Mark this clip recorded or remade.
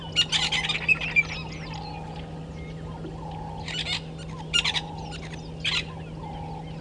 recorded